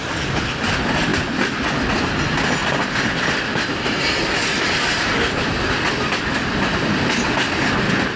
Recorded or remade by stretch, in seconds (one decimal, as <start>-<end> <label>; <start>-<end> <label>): 0.0-2.6 recorded; 2.6-5.1 remade; 5.1-8.2 recorded